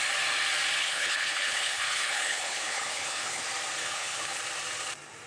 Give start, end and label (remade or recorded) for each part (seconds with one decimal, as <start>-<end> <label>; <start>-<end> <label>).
0.0-0.8 recorded; 0.8-3.4 remade; 3.4-3.8 recorded; 3.8-4.4 remade; 4.4-5.3 recorded